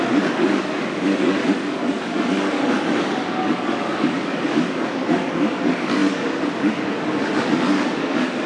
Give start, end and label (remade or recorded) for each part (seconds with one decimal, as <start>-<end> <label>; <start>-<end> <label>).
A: 0.0-8.5 remade